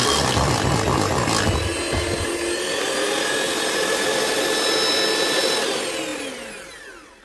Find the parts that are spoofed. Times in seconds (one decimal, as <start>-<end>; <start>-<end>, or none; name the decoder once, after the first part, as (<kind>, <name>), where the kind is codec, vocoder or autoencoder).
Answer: none